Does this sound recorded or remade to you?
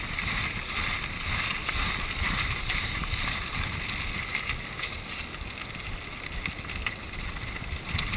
recorded